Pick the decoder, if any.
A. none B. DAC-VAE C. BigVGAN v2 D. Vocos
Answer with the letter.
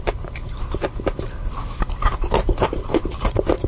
C